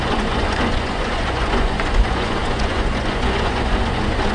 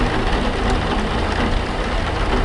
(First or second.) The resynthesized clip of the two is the first